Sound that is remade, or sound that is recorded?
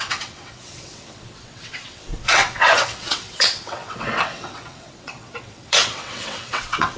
remade